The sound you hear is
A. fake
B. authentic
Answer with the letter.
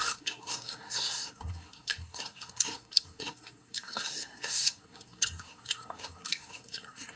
A